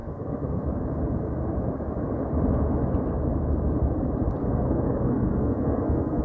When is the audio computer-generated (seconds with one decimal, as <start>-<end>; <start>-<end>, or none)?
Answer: 0.0-0.7; 4.4-6.2